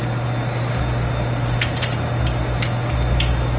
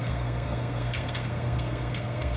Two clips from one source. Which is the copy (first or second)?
second